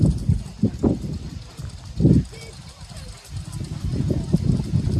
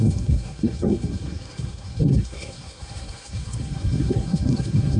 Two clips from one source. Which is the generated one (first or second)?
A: second